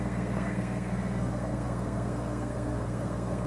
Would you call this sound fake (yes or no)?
yes